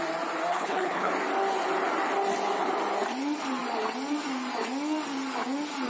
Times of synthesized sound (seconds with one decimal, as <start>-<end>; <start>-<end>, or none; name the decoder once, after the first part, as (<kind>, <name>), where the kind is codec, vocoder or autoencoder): 0.5-1.1 (codec, HILCodec)